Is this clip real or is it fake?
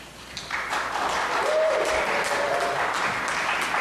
real